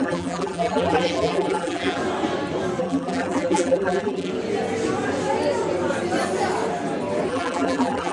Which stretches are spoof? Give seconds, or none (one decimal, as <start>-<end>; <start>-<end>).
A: 0.0-2.0; 2.8-4.3; 7.3-8.1